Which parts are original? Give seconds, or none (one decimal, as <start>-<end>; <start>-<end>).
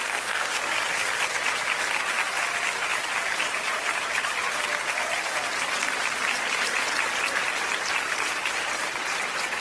0.6-9.6